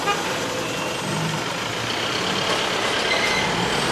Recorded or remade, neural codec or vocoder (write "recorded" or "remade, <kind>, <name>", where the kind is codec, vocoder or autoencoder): recorded